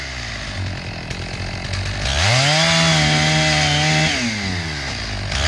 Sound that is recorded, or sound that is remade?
recorded